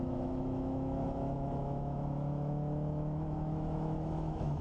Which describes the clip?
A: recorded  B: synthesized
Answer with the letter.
B